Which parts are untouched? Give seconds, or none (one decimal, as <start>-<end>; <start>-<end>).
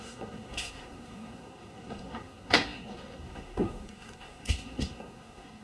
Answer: none